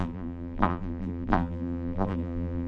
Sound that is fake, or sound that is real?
fake